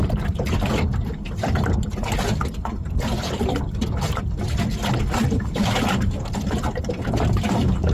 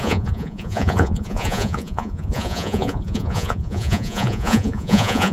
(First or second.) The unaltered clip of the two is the first